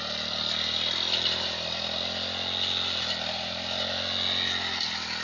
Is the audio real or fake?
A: real